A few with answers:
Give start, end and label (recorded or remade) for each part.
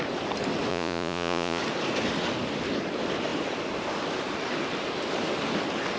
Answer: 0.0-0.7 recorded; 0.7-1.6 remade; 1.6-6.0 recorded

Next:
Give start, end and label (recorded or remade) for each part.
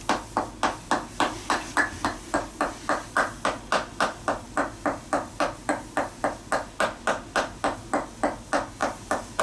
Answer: 0.0-9.4 recorded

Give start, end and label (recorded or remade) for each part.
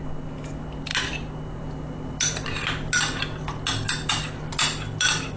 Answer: 0.0-5.4 recorded